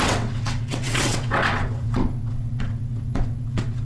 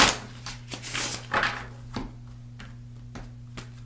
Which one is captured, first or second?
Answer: second